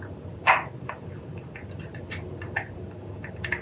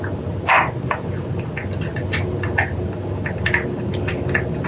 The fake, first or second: first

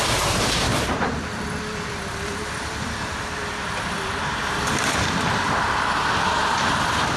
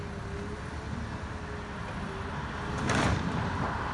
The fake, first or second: first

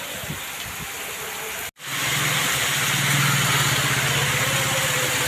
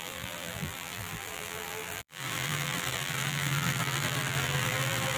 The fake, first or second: second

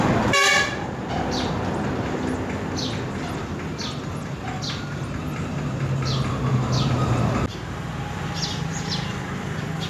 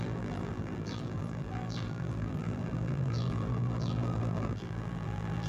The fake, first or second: second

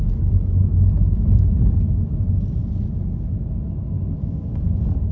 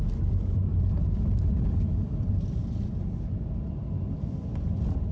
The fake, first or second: second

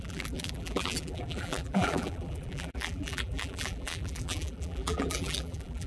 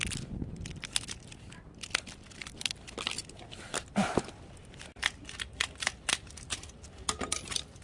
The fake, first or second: first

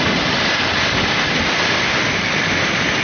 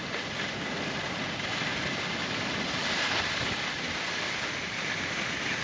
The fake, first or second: second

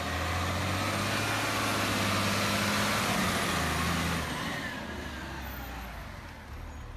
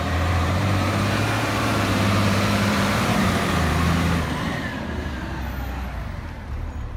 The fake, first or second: second